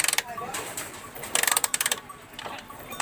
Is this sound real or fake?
fake